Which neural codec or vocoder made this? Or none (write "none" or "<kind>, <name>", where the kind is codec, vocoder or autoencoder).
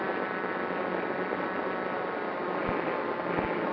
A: none